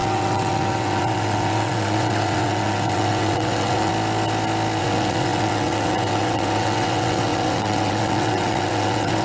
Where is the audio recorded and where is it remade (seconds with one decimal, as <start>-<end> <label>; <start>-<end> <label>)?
0.0-3.9 remade; 3.9-4.8 recorded; 4.8-9.2 remade